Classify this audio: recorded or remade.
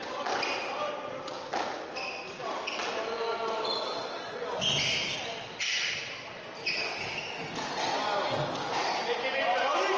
recorded